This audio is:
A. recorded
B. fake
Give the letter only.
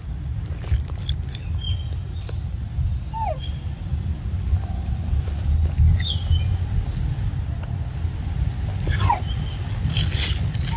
A